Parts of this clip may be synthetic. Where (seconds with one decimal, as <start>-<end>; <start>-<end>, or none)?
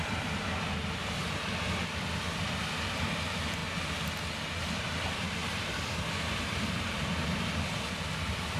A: 0.0-1.2; 2.0-3.6; 4.6-8.6